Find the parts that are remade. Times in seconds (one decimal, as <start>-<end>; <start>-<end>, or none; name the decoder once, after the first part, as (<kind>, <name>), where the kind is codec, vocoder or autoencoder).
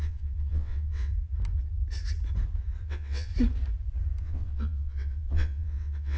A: 0.0-1.1 (vocoder, WaveNeXt); 2.8-3.3; 4.2-6.2